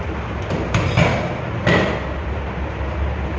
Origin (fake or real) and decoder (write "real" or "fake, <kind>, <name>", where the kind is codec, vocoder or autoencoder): real